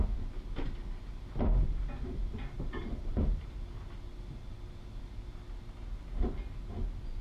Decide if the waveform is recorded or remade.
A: recorded